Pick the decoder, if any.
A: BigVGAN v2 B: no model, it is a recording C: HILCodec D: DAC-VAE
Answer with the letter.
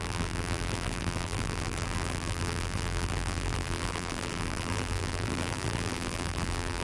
A